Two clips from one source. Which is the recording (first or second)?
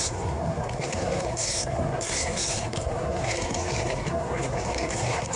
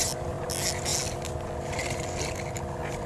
second